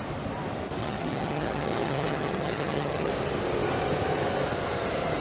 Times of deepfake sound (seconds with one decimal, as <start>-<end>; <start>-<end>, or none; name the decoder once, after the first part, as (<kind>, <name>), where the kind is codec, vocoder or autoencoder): 0.8-3.1 (vocoder, HiFi-GAN)